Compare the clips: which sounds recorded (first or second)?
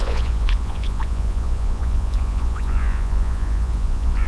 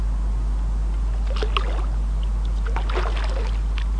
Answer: second